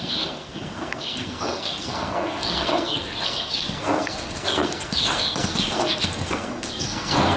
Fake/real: fake